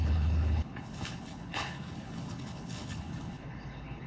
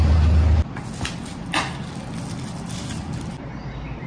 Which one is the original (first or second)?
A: second